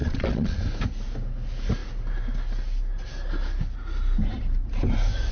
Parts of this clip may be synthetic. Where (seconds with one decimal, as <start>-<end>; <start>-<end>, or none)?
0.0-0.6